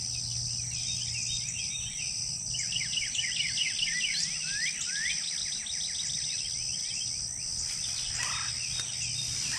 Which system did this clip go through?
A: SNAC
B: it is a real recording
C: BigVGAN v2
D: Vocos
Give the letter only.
B